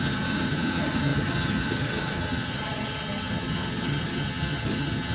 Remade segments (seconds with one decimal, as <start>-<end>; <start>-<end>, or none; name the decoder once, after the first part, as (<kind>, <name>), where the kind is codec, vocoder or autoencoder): 0.0-5.1 (vocoder, HiFi-GAN)